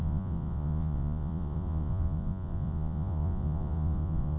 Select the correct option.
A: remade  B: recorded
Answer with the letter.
A